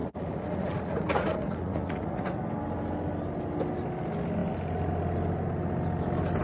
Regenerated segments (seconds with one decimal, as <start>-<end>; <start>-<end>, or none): 0.0-2.4